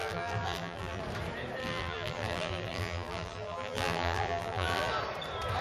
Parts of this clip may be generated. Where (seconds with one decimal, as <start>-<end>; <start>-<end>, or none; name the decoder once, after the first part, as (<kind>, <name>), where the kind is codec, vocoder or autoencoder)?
0.0-1.0 (vocoder, BigVGAN v2); 1.6-4.9